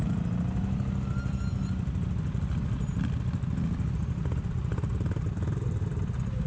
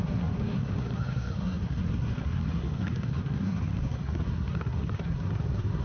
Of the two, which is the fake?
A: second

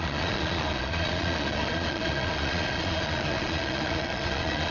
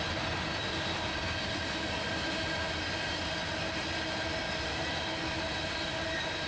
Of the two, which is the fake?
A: first